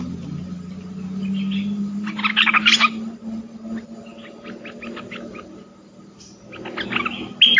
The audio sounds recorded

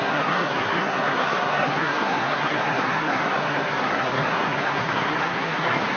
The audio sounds remade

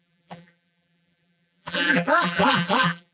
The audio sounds remade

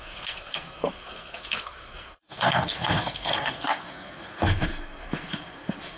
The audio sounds remade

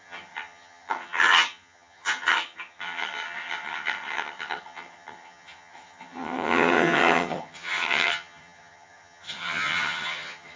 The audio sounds remade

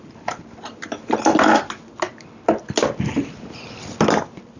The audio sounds recorded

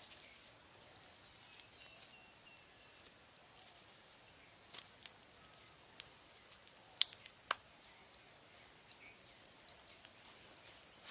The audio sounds recorded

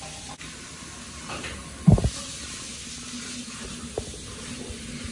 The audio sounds recorded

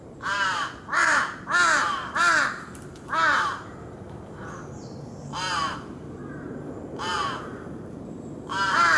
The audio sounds remade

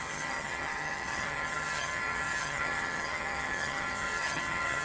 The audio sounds remade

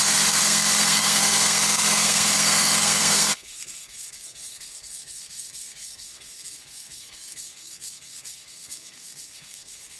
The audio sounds remade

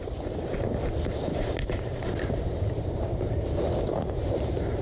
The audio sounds remade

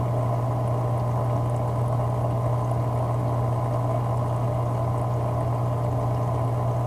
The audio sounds recorded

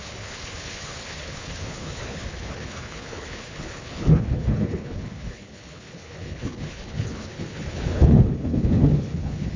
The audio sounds remade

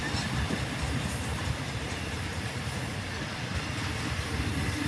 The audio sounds recorded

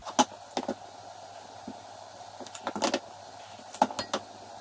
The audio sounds recorded